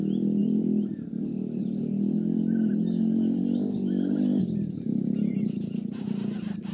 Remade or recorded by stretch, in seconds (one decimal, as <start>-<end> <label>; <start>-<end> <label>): 0.0-6.7 recorded